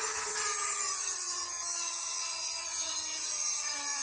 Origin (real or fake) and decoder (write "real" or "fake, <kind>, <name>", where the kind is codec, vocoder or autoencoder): fake, vocoder, HiFi-GAN